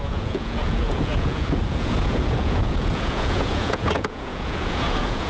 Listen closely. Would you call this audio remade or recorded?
remade